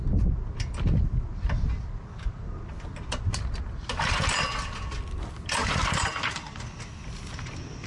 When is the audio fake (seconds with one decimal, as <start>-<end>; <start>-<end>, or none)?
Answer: none